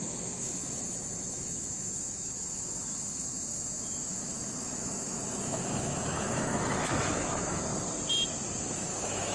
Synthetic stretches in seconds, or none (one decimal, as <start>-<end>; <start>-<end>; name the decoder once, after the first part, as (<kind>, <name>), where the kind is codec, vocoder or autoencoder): 0.0-7.7 (autoencoder, DAC-VAE); 8.6-9.3